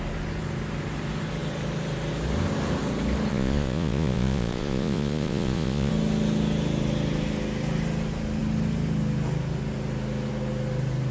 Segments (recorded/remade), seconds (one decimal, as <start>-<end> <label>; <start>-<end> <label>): 0.0-3.3 recorded; 3.3-5.9 remade; 5.9-11.1 recorded